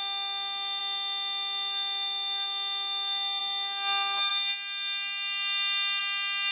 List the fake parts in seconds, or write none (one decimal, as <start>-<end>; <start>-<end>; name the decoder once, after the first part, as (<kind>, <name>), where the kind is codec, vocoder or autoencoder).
none